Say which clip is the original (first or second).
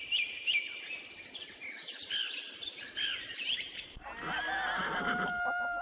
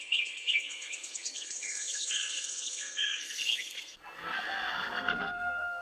first